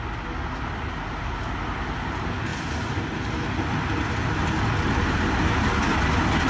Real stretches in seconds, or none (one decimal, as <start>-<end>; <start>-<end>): 0.0-6.5